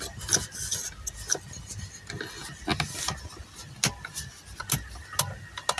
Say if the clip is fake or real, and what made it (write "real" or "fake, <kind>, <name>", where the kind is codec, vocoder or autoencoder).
real